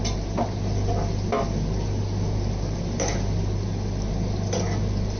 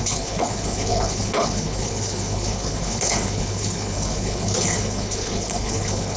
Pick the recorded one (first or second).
first